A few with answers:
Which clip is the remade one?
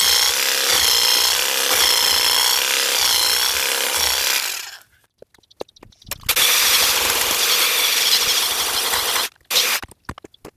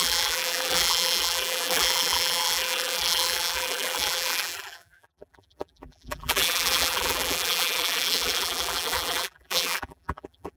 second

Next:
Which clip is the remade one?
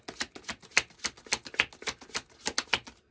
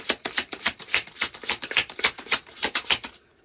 second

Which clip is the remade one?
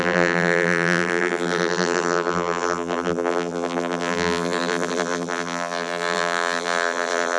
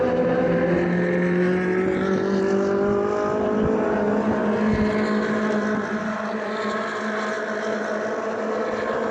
first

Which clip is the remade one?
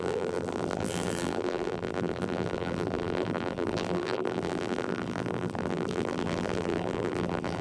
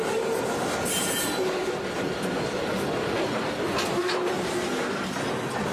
first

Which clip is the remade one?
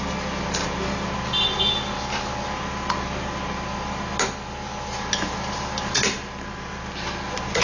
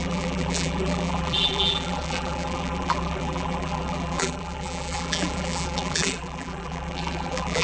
second